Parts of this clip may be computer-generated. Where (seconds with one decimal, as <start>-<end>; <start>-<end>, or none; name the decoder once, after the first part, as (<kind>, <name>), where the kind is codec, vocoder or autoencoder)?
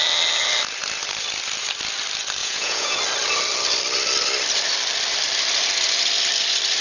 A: 2.4-3.0 (vocoder, Vocos)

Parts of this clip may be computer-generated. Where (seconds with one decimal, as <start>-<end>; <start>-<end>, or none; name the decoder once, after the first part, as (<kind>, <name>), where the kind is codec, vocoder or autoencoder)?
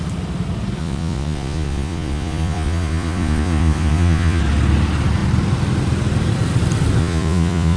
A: 0.8-4.4 (vocoder, Vocos); 7.0-7.8